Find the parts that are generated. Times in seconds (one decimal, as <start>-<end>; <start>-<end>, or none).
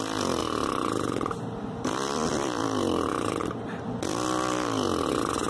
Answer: 0.4-3.4